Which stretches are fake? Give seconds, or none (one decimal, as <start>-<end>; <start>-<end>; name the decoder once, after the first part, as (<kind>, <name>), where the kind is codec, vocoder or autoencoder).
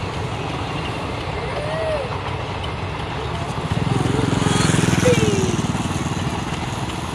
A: none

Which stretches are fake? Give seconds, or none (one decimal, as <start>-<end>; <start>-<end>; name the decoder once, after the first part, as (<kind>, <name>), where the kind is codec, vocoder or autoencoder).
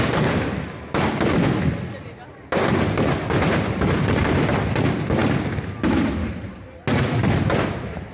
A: none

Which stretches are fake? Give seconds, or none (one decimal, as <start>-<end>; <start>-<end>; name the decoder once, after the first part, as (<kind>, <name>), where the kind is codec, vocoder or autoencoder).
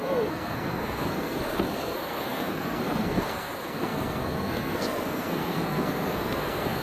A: 0.0-6.8 (codec, SNAC)